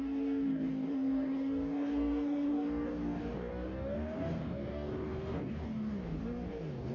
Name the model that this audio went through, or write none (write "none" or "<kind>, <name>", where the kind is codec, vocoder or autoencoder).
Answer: codec, DAC